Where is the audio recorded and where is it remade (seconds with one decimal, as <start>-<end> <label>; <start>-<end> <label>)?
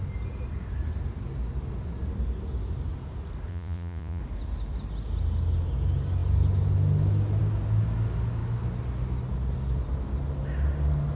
0.0-3.5 recorded; 3.5-4.2 remade; 4.2-11.2 recorded